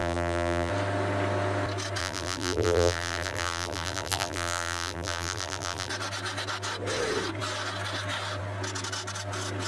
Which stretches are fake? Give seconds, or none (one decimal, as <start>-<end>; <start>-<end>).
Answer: 0.0-0.7; 2.0-5.9